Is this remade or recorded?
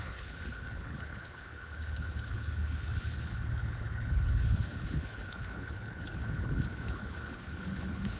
remade